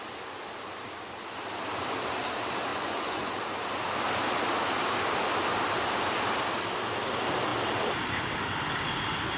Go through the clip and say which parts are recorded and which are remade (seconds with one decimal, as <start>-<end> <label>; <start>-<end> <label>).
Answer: 0.0-2.7 recorded; 2.7-3.3 remade; 3.3-9.4 recorded